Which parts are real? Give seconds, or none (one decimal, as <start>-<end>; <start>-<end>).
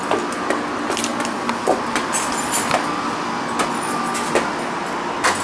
0.0-5.4